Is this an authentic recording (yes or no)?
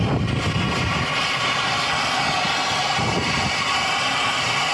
yes